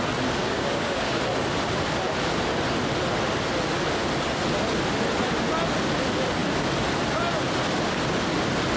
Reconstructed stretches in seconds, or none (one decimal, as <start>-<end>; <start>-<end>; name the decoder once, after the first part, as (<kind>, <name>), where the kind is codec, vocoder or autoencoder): 0.4-1.2 (codec, DAC)